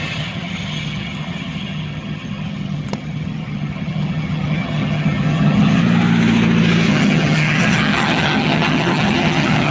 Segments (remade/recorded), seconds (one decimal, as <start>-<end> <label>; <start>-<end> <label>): 0.0-5.8 remade; 5.8-6.9 recorded; 6.9-9.7 remade

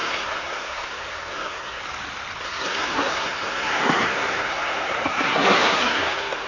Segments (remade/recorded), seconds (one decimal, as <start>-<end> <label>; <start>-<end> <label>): 0.0-1.8 remade; 1.8-2.4 recorded; 2.4-6.5 remade

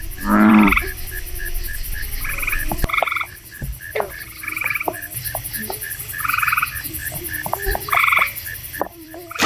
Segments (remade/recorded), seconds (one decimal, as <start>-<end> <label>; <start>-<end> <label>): 0.0-0.5 recorded; 0.5-1.9 remade; 1.9-3.0 recorded; 3.0-6.0 remade; 6.0-7.0 recorded; 7.0-8.0 remade; 8.0-8.9 recorded; 8.9-9.5 remade